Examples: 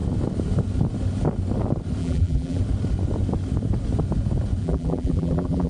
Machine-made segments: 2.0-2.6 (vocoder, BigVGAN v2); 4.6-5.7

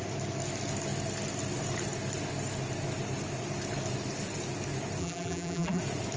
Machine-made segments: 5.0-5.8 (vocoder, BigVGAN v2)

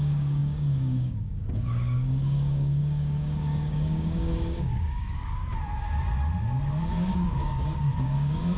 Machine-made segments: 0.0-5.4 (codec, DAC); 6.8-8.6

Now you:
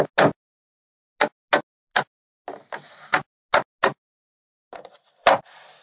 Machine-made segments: none